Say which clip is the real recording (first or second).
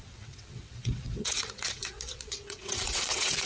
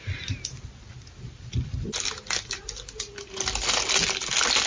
second